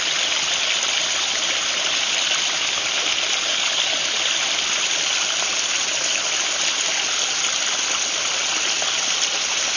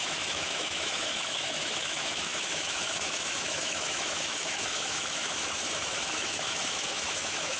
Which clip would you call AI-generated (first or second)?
second